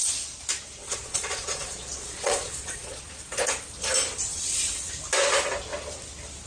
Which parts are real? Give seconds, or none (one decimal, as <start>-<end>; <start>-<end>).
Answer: 0.0-0.8; 3.0-4.3; 4.9-6.5